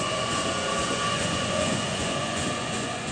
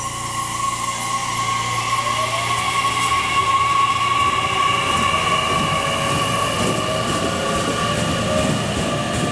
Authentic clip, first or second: second